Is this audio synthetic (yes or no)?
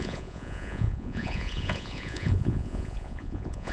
yes